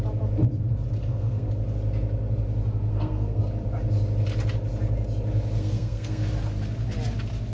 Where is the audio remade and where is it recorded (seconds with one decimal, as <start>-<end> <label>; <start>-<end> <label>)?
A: 0.0-1.0 recorded; 1.0-1.5 remade; 1.5-2.9 recorded; 2.9-3.4 remade; 3.4-5.6 recorded; 5.6-6.3 remade; 6.3-7.5 recorded